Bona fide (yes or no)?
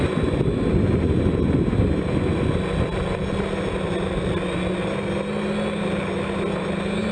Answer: yes